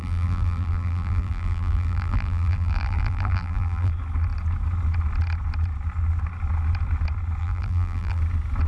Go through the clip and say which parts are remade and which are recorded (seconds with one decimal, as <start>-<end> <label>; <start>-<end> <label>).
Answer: 0.0-3.9 remade; 3.9-7.4 recorded; 7.4-8.2 remade; 8.2-8.7 recorded